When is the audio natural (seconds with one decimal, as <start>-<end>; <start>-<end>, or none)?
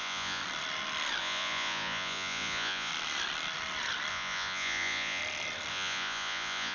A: 0.4-1.2; 2.9-4.1; 5.2-5.7